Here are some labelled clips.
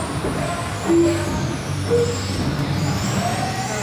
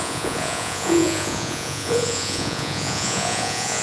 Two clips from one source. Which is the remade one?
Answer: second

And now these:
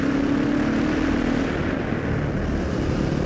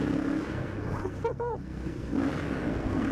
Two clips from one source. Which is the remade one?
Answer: second